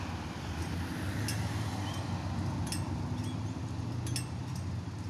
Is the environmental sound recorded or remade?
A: recorded